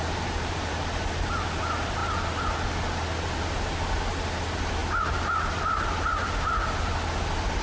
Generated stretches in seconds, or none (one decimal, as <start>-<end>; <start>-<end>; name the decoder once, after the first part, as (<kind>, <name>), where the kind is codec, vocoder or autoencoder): none